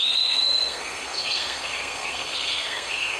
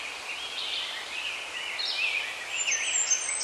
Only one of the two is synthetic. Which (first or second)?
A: first